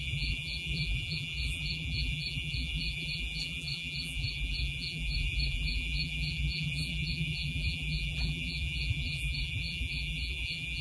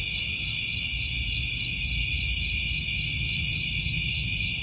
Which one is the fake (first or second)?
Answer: first